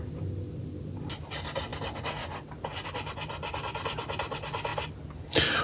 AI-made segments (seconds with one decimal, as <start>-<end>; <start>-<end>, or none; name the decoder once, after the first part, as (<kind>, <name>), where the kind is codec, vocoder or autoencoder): none